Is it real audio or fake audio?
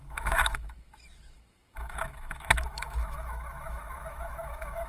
fake